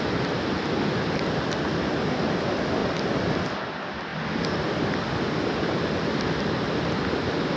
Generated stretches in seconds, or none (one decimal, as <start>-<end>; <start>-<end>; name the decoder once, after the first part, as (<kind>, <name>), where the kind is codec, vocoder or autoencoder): none